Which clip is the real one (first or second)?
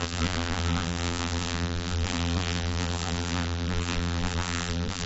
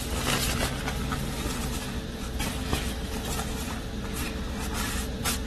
second